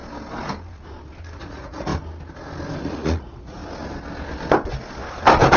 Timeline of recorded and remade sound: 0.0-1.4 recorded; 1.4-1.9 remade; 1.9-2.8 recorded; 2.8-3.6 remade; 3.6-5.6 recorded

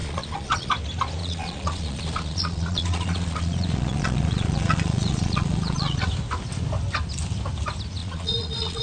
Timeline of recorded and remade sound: 0.0-0.7 remade; 0.7-1.2 recorded; 1.2-6.1 remade; 6.1-8.0 recorded; 8.0-8.8 remade